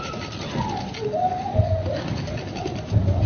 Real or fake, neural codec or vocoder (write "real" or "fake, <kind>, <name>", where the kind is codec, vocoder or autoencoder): real